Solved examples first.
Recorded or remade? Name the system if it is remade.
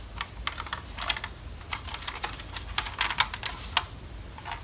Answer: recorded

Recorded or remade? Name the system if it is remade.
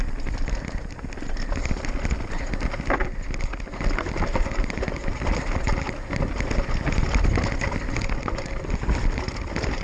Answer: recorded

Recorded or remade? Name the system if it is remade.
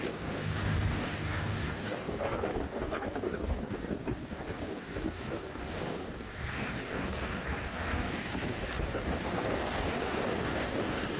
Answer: remade, codec, DAC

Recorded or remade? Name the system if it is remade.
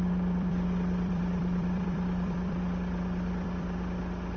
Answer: remade, vocoder, BigVGAN v2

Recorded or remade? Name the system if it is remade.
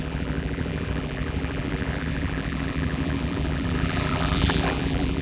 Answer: remade, vocoder, BigVGAN v2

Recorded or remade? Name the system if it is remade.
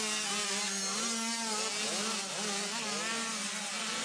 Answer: recorded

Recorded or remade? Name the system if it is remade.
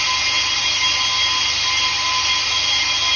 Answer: recorded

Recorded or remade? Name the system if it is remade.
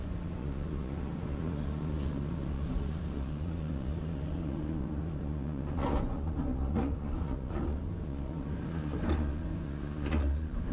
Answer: remade, vocoder, Vocos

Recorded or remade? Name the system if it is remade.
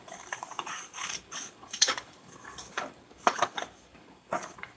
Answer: remade, codec, DAC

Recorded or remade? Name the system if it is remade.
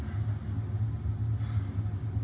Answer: recorded